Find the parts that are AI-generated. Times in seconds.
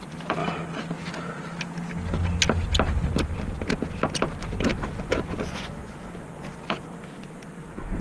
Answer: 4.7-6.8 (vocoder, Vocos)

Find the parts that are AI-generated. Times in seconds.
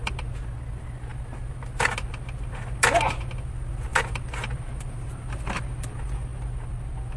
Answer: none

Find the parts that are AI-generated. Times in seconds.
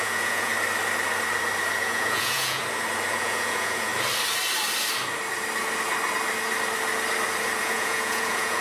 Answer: 0.0-0.5 (vocoder, Vocos); 1.8-2.6; 3.1-3.9; 7.6-8.6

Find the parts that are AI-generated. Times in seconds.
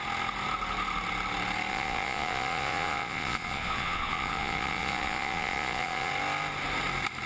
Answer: 1.7-6.1 (vocoder, Vocos)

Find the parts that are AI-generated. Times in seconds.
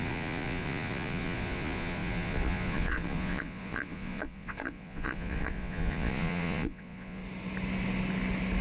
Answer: 0.0-7.2 (vocoder, Vocos)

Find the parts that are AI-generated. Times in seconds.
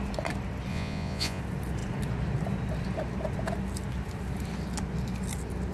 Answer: 0.7-1.4 (vocoder, Vocos)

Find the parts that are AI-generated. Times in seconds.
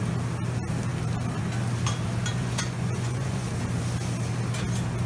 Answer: 2.4-3.5 (vocoder, Vocos)